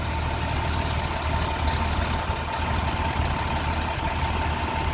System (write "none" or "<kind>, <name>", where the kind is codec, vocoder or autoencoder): none